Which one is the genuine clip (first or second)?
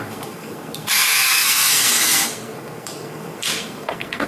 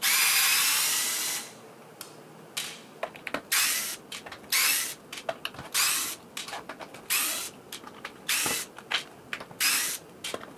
second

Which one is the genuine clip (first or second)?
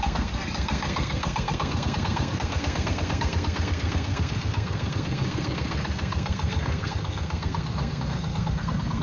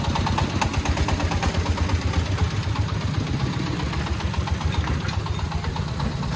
second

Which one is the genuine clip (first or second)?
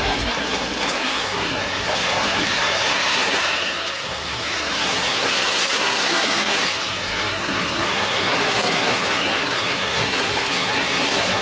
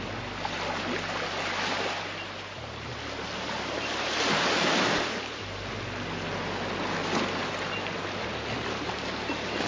second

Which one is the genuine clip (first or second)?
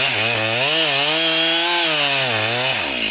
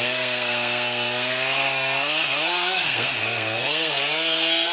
first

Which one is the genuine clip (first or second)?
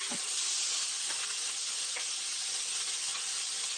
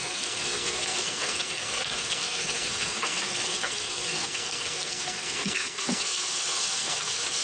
first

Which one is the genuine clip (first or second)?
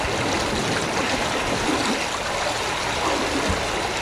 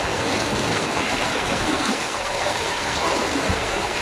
first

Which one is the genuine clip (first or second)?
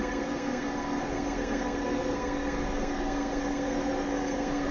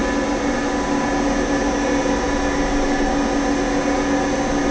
second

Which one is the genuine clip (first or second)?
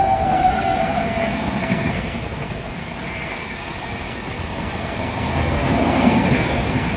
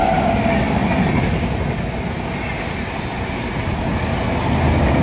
second